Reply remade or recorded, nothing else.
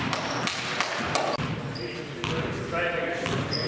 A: recorded